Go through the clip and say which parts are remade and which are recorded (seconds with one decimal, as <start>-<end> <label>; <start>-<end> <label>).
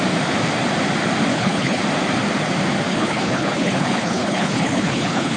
0.0-1.3 recorded; 1.3-1.8 remade; 1.8-2.9 recorded; 2.9-5.4 remade